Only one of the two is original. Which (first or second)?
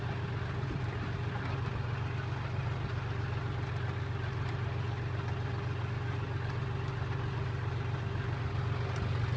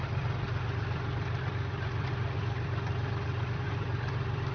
first